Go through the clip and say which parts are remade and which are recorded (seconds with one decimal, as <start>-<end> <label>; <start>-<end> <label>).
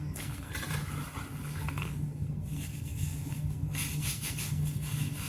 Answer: 0.0-0.5 remade; 0.5-1.3 recorded; 1.3-5.3 remade